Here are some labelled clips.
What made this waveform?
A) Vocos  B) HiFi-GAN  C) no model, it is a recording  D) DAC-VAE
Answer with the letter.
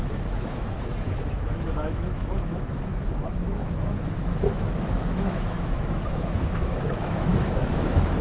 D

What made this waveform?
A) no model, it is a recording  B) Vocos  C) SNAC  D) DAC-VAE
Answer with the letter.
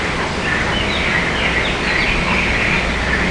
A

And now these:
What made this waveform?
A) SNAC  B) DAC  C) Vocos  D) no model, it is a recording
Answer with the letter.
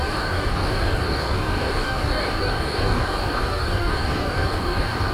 B